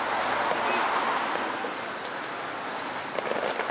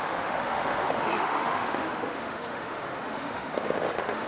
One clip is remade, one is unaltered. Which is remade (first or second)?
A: second